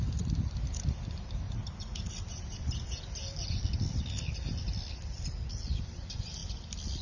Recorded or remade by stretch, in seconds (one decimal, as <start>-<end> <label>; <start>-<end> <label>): 0.0-7.0 recorded